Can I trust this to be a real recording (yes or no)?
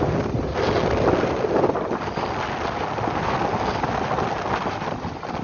yes